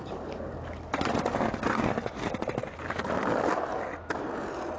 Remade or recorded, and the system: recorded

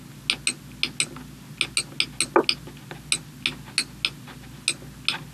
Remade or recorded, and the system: recorded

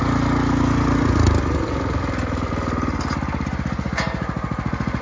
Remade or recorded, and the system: recorded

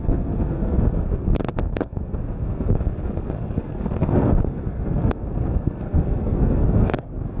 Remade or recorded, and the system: remade, codec, SNAC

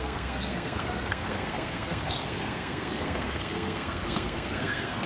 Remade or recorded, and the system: remade, codec, SNAC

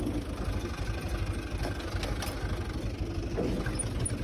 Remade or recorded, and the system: recorded